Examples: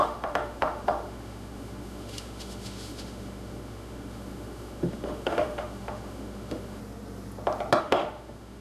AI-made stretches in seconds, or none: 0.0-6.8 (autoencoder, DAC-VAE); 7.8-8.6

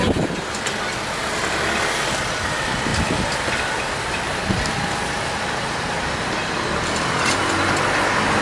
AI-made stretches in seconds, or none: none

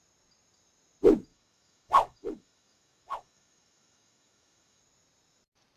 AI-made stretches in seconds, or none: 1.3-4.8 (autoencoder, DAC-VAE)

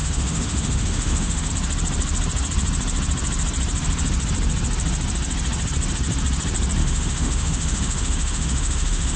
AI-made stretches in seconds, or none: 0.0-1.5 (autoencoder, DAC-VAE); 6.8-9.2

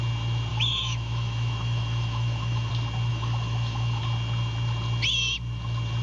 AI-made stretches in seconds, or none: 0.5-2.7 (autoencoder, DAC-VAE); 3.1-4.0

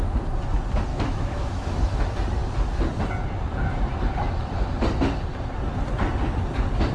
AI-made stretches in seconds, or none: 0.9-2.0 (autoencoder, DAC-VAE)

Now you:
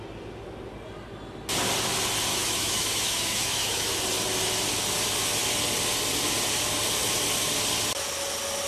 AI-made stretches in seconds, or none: 2.3-3.9 (autoencoder, DAC-VAE)